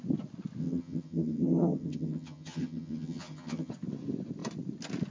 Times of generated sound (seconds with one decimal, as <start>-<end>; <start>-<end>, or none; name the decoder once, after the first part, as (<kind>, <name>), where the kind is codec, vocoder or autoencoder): 0.6-3.7 (vocoder, HiFi-GAN)